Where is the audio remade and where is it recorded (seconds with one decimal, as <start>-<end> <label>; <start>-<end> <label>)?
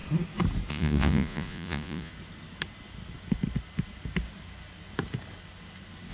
0.0-0.7 recorded; 0.7-2.1 remade; 2.1-6.1 recorded